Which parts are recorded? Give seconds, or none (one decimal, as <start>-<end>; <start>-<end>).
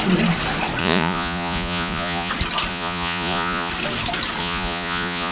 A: 0.0-0.8; 2.3-2.7; 3.7-4.4